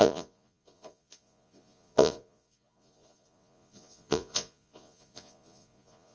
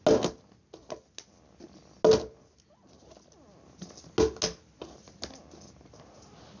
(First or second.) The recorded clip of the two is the second